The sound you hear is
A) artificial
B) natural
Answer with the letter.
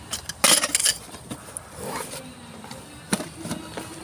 B